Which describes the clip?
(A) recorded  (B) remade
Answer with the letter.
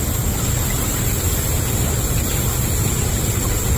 A